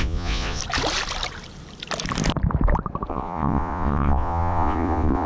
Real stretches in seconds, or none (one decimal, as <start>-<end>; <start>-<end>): 0.6-3.1